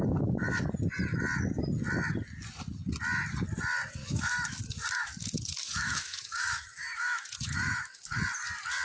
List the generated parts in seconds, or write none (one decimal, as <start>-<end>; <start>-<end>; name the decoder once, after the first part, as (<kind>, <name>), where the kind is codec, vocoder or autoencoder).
4.0-8.2 (autoencoder, DAC-VAE)